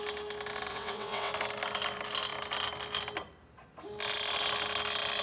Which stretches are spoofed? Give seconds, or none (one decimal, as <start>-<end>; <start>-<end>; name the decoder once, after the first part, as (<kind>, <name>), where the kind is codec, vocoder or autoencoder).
0.7-1.3 (vocoder, WaveNeXt)